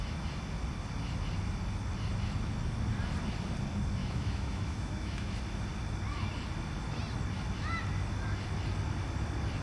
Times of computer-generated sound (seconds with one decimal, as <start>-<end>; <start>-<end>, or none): 4.0-5.3